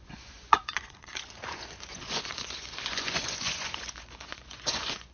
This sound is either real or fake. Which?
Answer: fake